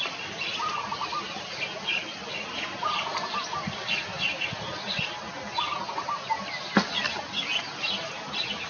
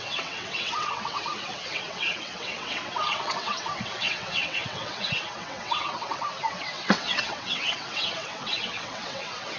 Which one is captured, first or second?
first